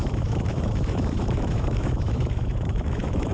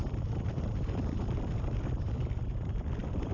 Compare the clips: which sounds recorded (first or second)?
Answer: second